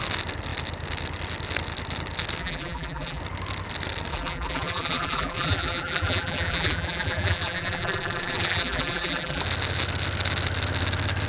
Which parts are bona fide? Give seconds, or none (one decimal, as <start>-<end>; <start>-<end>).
0.0-2.4; 3.2-4.1; 9.4-11.3